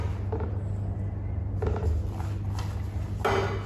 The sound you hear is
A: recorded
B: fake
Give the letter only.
A